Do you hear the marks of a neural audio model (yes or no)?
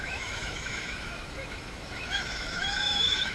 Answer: yes